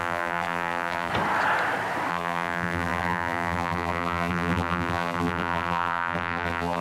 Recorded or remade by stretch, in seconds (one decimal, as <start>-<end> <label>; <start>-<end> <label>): 0.0-1.1 remade; 1.1-2.1 recorded; 2.1-6.8 remade